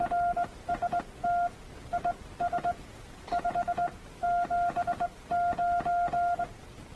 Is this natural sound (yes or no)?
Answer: yes